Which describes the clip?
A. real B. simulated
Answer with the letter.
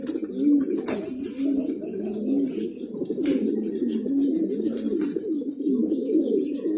B